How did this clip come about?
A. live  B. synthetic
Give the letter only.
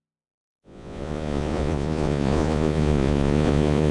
B